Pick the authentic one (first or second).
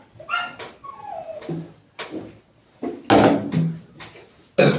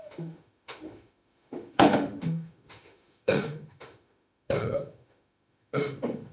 first